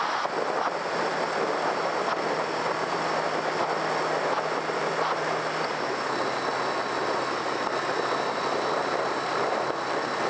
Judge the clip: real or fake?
real